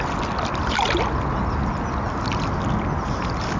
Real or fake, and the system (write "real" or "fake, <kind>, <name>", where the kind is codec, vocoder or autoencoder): real